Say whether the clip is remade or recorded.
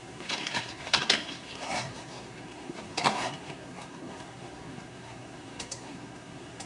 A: remade